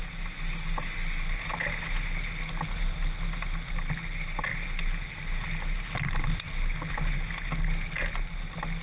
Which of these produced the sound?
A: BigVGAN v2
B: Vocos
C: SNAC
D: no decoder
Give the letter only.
D